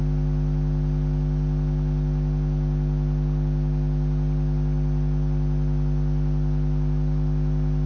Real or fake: real